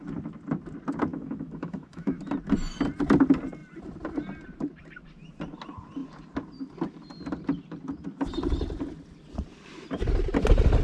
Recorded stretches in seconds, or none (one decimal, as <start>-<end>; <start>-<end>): 0.0-1.1; 2.2-10.8